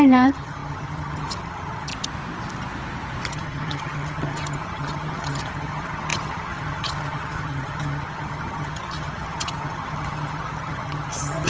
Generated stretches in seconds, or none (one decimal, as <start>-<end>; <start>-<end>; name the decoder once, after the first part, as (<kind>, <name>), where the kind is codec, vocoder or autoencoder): 0.0-1.9 (vocoder, HiFi-GAN); 3.3-11.5

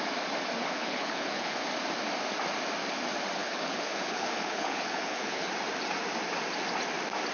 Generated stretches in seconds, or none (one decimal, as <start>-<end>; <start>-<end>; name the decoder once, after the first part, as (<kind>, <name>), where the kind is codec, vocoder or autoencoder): 0.6-1.6 (codec, HILCodec); 3.4-5.5

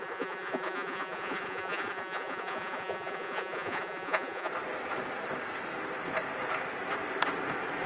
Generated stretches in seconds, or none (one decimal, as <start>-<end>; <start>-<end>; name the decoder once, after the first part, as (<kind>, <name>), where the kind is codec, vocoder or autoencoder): 0.0-4.5 (vocoder, Vocos)

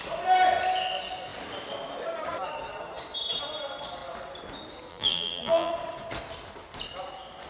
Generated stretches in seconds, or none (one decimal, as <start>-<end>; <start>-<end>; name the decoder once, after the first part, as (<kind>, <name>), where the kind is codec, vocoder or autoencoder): 4.9-5.7 (vocoder, BigVGAN v2)

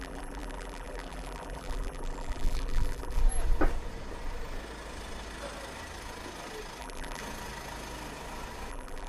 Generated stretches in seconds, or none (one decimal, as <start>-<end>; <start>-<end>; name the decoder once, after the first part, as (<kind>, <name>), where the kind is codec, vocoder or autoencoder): 0.0-3.2 (vocoder, BigVGAN v2); 6.8-7.2; 8.7-9.1

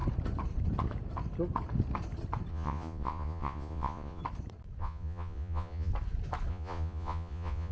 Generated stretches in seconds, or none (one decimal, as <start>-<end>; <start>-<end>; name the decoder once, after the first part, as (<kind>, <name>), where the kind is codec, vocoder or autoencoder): 2.5-4.2 (vocoder, Vocos); 4.8-5.9; 6.5-7.7

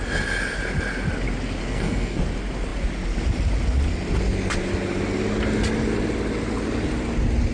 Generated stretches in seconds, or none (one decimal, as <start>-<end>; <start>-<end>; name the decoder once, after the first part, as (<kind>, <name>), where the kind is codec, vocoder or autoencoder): 1.6-2.2 (codec, SNAC)

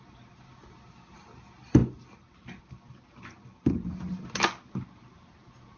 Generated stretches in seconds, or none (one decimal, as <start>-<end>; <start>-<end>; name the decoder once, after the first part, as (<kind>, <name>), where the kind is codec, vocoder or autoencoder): none